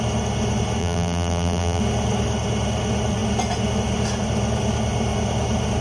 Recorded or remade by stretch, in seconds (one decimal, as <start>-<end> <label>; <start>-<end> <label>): 0.0-0.8 recorded; 0.8-1.8 remade; 1.8-5.8 recorded